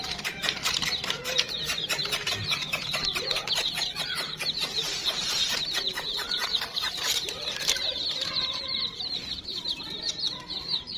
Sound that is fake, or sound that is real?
fake